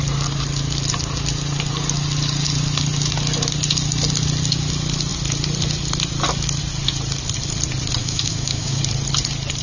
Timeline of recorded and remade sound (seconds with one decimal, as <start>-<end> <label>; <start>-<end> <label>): 0.0-8.0 recorded; 8.0-8.8 remade; 8.8-9.6 recorded